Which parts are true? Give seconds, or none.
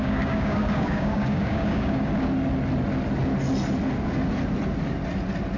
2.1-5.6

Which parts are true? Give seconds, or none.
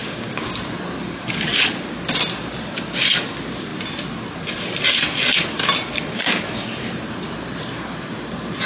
0.5-8.7